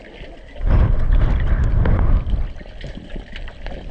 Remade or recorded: recorded